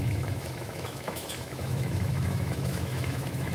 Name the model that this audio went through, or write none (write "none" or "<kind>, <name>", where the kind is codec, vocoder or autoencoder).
autoencoder, DAC-VAE